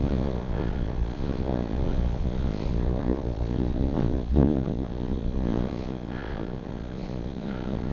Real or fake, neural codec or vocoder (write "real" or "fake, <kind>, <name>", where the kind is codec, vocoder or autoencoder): fake, vocoder, Vocos